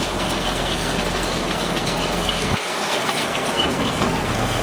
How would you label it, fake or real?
fake